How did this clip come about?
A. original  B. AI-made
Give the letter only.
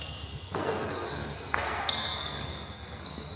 B